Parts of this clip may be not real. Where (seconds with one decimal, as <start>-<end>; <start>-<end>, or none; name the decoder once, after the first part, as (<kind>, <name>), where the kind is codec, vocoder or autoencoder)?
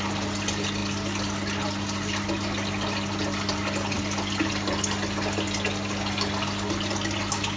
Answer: none